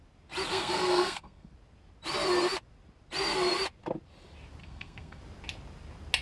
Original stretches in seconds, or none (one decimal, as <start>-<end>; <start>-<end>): 0.0-0.5; 1.5-4.6; 5.2-6.2